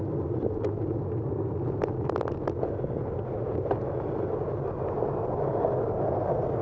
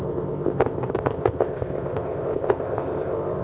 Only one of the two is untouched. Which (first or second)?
first